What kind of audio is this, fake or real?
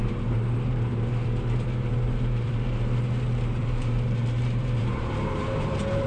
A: fake